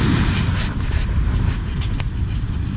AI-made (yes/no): no